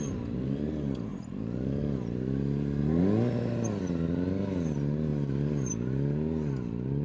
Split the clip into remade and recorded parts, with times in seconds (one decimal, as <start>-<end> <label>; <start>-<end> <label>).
0.0-7.0 recorded